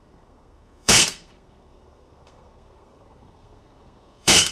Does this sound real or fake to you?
fake